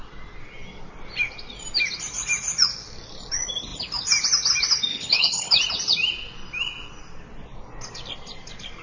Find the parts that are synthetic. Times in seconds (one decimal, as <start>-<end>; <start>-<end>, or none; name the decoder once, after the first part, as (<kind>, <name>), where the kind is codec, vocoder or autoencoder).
4.9-5.5 (codec, HILCodec)